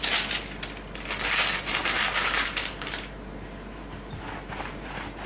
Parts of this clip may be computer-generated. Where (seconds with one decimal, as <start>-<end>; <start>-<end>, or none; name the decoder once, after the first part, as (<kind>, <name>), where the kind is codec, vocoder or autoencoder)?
1.8-5.3 (vocoder, BigVGAN v2)